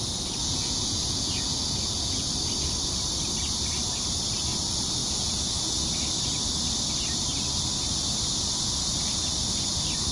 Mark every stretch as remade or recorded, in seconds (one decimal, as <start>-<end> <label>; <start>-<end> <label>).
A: 0.0-0.4 recorded; 0.4-2.3 remade; 2.3-5.0 recorded; 5.0-5.8 remade; 5.8-10.1 recorded

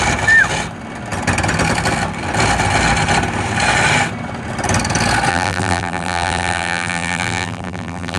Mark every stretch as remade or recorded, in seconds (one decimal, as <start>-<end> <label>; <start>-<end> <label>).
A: 0.0-5.3 recorded; 5.3-8.2 remade